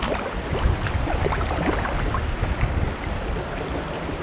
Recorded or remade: recorded